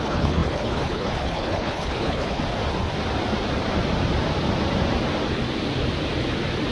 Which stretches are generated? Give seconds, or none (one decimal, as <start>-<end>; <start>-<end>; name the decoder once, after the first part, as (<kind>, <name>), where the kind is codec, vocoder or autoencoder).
0.0-2.4 (codec, HILCodec)

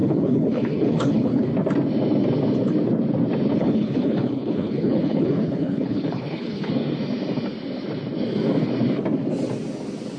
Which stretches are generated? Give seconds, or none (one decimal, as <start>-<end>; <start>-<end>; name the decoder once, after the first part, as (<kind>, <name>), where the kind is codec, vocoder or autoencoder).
0.0-1.5 (codec, HILCodec); 3.6-6.7

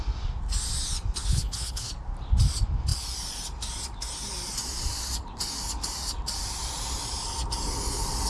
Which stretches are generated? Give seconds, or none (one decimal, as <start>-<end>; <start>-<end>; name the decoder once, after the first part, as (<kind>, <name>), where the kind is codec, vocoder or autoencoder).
1.2-1.9 (codec, HILCodec)

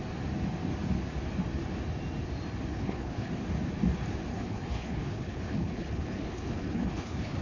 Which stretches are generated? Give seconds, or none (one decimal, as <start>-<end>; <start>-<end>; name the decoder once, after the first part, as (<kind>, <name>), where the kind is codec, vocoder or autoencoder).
2.7-3.3 (codec, HILCodec); 4.3-7.4